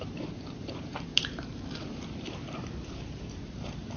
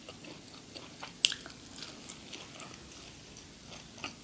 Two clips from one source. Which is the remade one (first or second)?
first